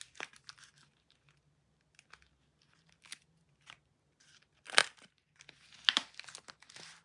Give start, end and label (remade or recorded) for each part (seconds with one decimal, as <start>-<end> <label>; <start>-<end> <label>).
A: 0.0-7.0 recorded